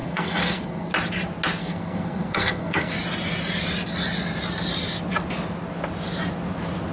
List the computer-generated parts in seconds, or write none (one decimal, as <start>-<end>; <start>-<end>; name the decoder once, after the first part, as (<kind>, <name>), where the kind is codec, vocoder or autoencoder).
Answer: 0.0-0.9 (codec, SNAC); 1.6-2.9